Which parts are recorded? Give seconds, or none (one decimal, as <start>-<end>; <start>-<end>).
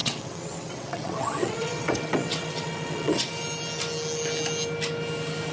3.3-5.5